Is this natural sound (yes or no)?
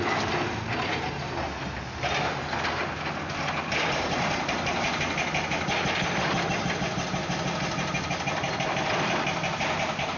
yes